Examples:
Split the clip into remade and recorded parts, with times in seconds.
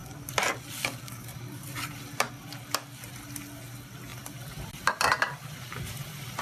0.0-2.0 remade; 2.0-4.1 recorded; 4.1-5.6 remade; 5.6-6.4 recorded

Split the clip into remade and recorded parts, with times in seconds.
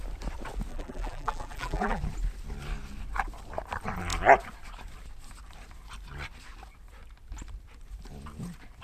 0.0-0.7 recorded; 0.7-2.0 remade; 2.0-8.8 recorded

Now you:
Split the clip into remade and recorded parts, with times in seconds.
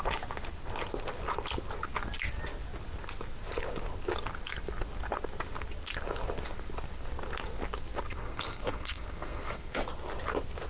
0.0-8.1 recorded; 8.1-9.8 remade; 9.8-10.7 recorded